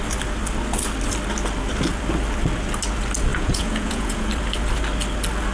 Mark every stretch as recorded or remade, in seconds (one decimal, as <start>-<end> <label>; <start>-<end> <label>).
0.0-3.3 recorded; 3.3-4.3 remade; 4.3-5.5 recorded

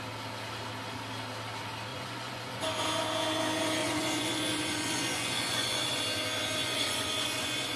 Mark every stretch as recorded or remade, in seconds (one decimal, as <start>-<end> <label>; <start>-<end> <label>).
0.0-1.9 recorded; 1.9-2.6 remade; 2.6-3.8 recorded; 3.8-6.0 remade; 6.0-6.6 recorded; 6.6-7.8 remade